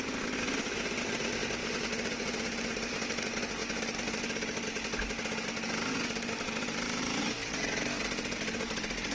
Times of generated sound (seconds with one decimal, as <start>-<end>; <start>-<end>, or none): none